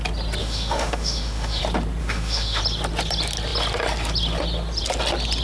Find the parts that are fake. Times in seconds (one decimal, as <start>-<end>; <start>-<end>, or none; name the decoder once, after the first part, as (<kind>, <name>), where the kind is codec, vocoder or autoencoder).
0.4-1.6 (autoencoder, DAC-VAE); 2.0-2.6